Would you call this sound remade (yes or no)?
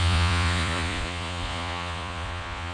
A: yes